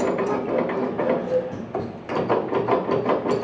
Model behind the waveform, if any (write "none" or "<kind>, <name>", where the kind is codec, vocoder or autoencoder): none